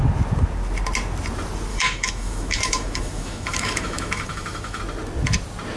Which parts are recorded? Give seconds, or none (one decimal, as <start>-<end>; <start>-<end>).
0.0-1.7; 4.8-5.8

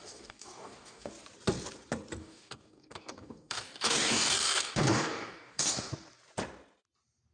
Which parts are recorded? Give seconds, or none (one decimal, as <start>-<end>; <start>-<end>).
1.1-2.2; 5.9-7.3

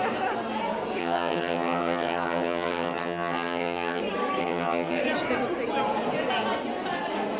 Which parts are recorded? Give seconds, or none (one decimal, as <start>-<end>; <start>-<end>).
0.0-1.0; 4.0-4.4; 5.0-7.4

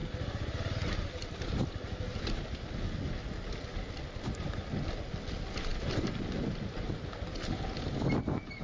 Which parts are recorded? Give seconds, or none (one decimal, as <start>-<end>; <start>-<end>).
0.0-8.6

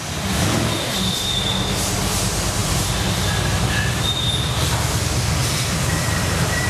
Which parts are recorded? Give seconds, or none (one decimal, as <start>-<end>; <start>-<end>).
0.0-2.6

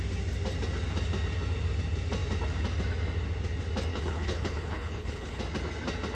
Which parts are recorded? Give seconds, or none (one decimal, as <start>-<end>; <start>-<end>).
0.0-3.9; 5.4-6.1

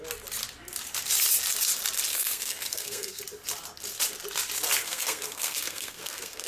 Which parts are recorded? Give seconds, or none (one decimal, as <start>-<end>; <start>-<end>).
0.0-2.1; 3.2-4.8